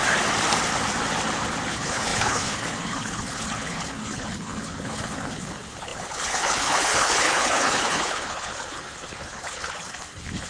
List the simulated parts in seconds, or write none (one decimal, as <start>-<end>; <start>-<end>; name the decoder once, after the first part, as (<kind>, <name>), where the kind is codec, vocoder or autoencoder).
1.7-10.5 (codec, HILCodec)